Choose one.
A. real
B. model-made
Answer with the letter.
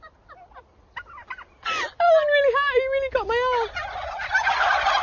A